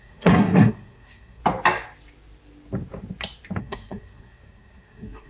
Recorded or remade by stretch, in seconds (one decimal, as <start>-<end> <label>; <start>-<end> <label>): 0.0-1.4 remade; 1.4-3.6 recorded; 3.6-5.3 remade